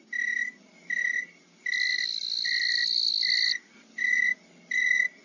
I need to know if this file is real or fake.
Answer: real